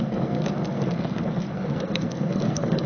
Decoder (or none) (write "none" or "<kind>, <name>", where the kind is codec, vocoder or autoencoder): codec, SNAC